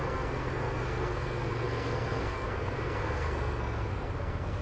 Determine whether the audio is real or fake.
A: fake